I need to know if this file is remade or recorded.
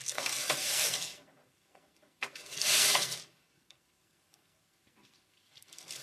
remade